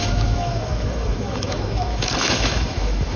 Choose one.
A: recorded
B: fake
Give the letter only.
B